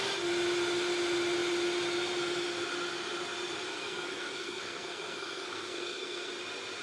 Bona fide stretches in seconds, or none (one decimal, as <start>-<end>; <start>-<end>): 0.0-3.7; 6.3-6.8